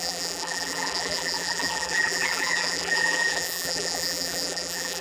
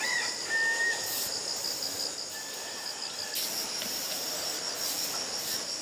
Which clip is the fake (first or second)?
first